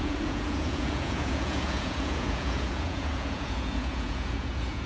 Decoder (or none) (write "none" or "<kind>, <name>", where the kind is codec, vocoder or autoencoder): vocoder, Vocos